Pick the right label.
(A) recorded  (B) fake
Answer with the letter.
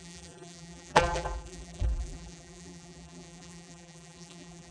B